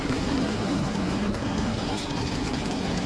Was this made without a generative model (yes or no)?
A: no